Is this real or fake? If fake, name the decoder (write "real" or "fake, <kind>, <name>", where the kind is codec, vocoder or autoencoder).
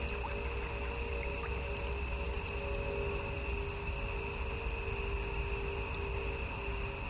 real